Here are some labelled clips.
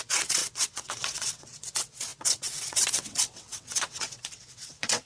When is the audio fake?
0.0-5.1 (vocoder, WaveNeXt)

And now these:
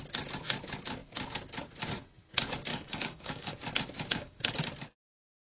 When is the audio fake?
2.7-3.6 (codec, DAC); 4.1-4.7

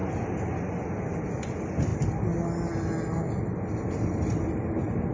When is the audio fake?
none

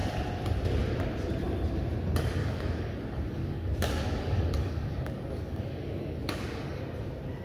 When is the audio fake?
2.4-6.8 (codec, DAC)

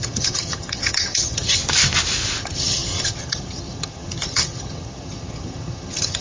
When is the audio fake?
0.0-1.6 (vocoder, HiFi-GAN); 2.4-6.2

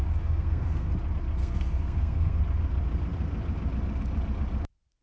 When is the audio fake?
0.0-0.9 (codec, SNAC); 1.4-2.4

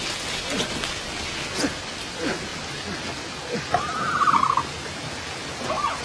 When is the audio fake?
none